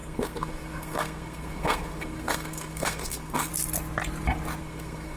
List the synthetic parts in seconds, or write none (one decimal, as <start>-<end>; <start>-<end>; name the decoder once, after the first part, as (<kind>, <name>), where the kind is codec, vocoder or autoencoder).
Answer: 0.0-3.5 (codec, SNAC); 4.6-5.2